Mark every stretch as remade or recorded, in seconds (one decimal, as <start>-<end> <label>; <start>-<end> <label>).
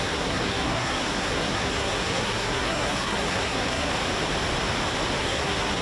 0.0-3.9 remade; 3.9-5.2 recorded; 5.2-5.8 remade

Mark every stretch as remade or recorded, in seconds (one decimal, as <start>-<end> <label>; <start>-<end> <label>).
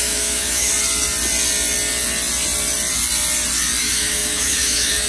0.0-0.7 remade; 0.7-3.8 recorded; 3.8-5.1 remade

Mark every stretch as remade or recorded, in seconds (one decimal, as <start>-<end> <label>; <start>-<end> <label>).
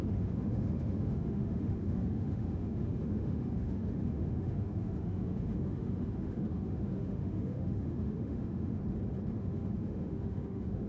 0.0-8.8 remade; 8.8-9.4 recorded; 9.4-10.9 remade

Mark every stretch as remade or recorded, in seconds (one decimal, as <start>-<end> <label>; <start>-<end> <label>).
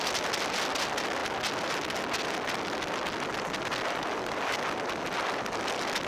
0.0-6.1 recorded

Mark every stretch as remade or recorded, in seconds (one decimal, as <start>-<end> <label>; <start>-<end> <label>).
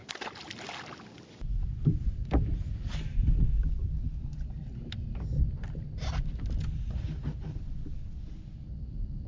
0.0-9.3 recorded